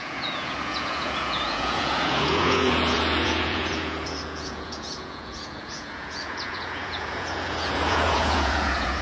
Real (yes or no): no